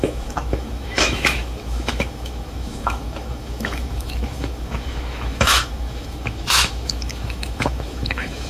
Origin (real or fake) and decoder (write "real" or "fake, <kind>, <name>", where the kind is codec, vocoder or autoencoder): fake, autoencoder, DAC-VAE